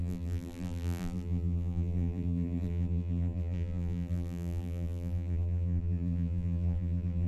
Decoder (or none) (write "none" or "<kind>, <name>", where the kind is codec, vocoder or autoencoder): vocoder, BigVGAN v2